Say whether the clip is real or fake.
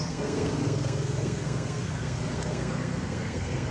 fake